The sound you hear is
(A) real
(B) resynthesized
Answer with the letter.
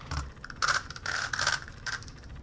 B